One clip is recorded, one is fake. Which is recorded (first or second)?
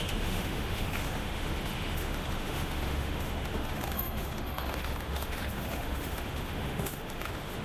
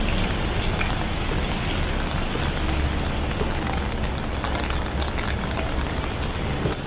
second